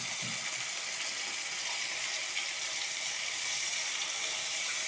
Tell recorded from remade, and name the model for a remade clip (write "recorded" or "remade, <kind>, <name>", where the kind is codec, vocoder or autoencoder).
recorded